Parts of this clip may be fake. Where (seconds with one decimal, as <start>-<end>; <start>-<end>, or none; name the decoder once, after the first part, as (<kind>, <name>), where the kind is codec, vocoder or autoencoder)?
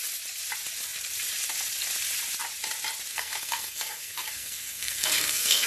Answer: 3.1-5.7 (codec, SNAC)